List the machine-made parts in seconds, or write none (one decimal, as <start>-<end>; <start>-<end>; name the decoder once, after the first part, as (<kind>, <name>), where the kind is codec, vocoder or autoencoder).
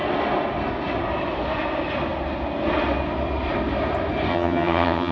4.3-5.1 (vocoder, HiFi-GAN)